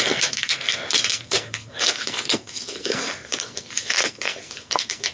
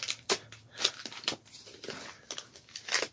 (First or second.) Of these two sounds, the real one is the second